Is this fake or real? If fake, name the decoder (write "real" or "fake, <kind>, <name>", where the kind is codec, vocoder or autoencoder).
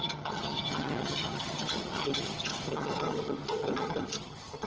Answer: fake, vocoder, HiFi-GAN